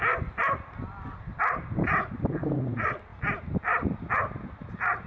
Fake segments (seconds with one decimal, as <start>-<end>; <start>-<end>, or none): none